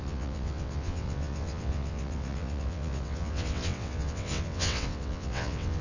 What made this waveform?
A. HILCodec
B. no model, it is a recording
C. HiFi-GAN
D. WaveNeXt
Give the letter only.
D